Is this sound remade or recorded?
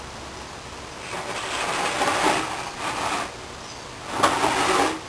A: recorded